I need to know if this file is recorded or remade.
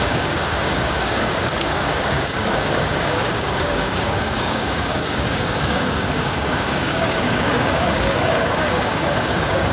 remade